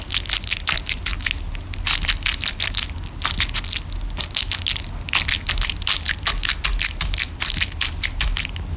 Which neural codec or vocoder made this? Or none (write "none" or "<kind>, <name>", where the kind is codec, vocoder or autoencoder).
none